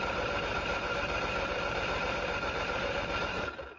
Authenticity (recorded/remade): remade